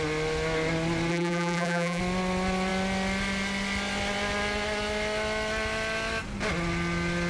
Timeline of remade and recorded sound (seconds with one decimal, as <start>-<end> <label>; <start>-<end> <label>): 0.0-1.1 recorded; 1.1-2.0 remade; 2.0-7.3 recorded